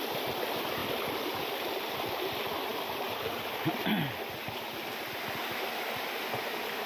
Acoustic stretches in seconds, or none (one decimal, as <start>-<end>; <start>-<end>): 0.0-2.7; 3.6-6.9